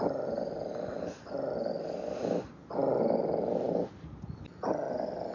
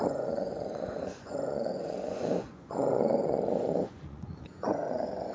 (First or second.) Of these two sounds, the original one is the first